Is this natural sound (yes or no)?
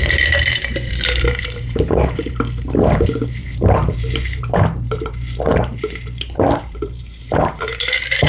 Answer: no